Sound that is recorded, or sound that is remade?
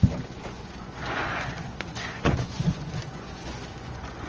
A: remade